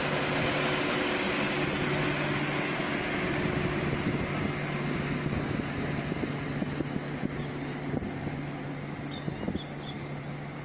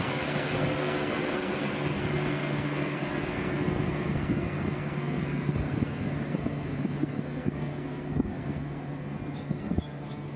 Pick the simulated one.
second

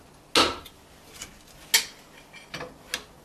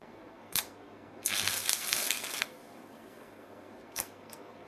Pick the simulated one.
second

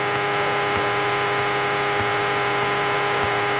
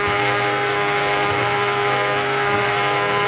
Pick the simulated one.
second